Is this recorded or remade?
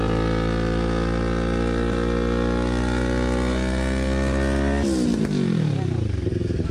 recorded